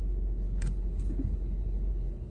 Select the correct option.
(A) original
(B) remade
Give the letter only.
B